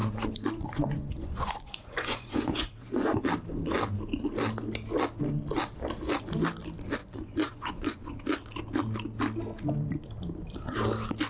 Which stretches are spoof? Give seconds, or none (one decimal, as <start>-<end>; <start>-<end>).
0.0-3.2; 7.0-8.1